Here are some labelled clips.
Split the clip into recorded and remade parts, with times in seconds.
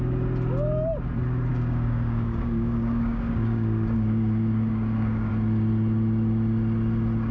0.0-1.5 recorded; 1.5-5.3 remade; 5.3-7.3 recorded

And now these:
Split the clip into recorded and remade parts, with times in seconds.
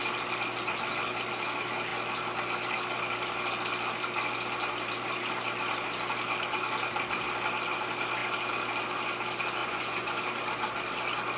0.0-9.6 recorded; 9.6-10.2 remade; 10.2-11.4 recorded